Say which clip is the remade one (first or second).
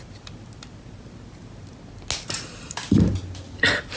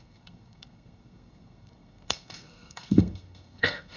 second